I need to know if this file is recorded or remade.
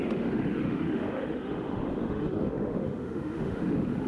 remade